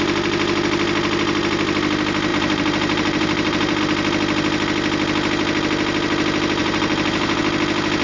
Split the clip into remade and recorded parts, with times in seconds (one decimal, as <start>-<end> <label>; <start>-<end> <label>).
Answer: 0.0-2.3 recorded; 2.3-3.8 remade; 3.8-6.6 recorded; 6.6-7.4 remade; 7.4-8.0 recorded